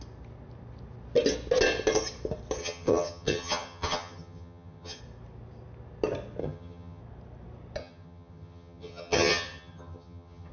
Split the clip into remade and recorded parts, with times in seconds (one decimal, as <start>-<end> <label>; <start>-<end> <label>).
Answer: 0.0-2.6 recorded; 2.6-5.0 remade; 5.0-6.4 recorded; 6.4-7.0 remade; 7.0-7.8 recorded; 7.8-10.5 remade